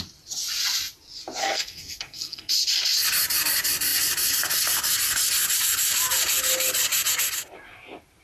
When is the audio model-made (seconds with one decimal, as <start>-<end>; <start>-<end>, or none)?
1.4-2.5